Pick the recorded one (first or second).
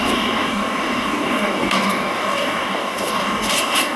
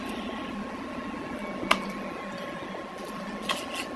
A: second